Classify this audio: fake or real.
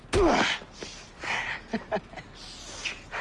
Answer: real